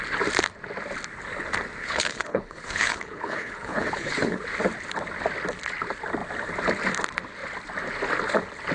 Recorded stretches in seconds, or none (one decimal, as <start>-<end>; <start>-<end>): 0.0-1.8; 4.4-8.7